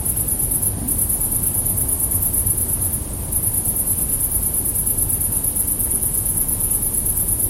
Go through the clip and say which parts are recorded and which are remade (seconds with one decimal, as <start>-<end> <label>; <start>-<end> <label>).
0.0-5.8 recorded; 5.8-6.7 remade; 6.7-7.5 recorded

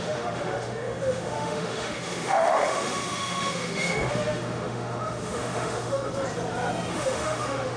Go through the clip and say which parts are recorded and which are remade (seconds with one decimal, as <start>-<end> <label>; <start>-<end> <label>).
0.0-6.1 remade; 6.1-6.9 recorded; 6.9-7.8 remade

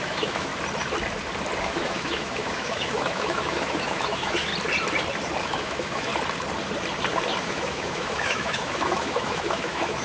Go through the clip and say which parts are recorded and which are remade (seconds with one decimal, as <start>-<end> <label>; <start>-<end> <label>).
0.0-0.5 remade; 0.5-1.6 recorded; 1.6-4.5 remade; 4.5-5.4 recorded; 5.4-6.1 remade; 6.1-7.4 recorded; 7.4-10.0 remade

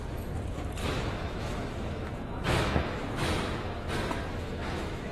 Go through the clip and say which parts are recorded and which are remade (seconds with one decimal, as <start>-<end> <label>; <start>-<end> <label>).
0.0-0.8 recorded; 0.8-3.9 remade; 3.9-4.3 recorded; 4.3-5.1 remade

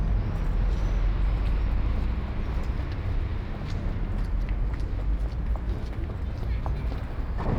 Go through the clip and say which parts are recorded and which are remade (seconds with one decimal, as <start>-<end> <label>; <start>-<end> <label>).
0.0-7.6 recorded

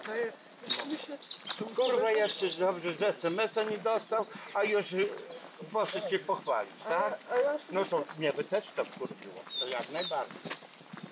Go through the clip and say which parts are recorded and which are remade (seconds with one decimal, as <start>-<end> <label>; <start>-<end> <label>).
0.0-5.4 recorded; 5.4-7.9 remade; 7.9-11.1 recorded

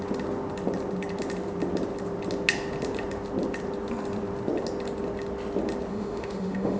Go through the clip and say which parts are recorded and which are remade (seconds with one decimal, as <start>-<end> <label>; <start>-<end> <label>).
0.0-5.9 recorded; 5.9-6.8 remade